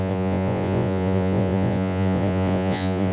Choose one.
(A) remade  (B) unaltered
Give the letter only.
A